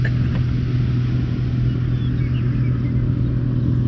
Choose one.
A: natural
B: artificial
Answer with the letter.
A